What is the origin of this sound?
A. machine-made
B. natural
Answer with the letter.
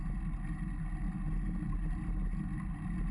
B